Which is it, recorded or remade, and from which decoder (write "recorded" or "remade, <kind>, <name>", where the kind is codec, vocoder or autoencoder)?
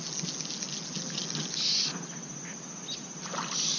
recorded